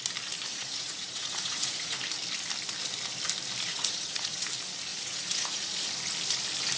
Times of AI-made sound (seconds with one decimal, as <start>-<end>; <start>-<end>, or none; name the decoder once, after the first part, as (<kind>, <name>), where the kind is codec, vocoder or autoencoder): 0.5-2.0 (vocoder, Vocos); 3.7-4.5; 4.9-5.8